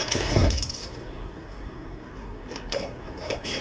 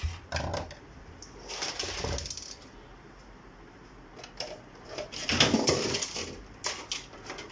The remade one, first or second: first